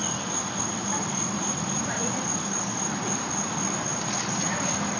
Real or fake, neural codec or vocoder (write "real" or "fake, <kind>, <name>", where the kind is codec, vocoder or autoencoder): real